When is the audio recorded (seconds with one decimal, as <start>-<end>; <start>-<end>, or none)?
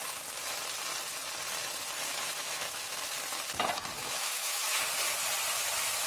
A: 0.0-2.1; 3.0-4.0; 4.8-6.1